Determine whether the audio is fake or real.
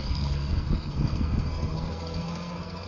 fake